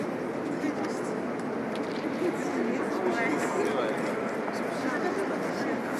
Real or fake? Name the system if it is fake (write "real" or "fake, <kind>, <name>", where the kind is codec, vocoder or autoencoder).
real